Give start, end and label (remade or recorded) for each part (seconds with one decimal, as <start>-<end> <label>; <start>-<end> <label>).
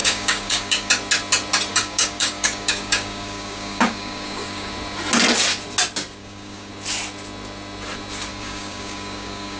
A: 0.0-0.9 remade; 0.9-1.7 recorded; 1.7-4.7 remade; 4.7-6.2 recorded; 6.2-6.7 remade; 6.7-8.3 recorded; 8.3-9.6 remade